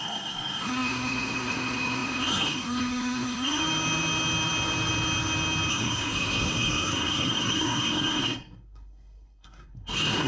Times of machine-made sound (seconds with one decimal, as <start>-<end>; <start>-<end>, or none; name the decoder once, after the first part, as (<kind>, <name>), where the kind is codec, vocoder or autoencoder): 0.0-3.6 (codec, SNAC); 5.7-10.3